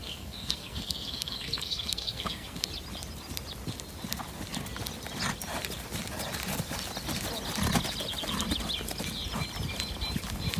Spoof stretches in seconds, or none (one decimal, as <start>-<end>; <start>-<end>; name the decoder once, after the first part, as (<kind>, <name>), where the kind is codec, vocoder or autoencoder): 0.0-2.7 (codec, SNAC)